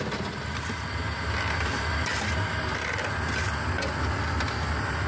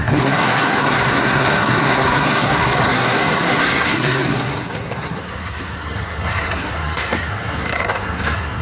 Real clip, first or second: first